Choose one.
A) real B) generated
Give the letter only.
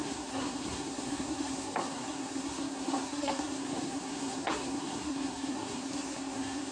B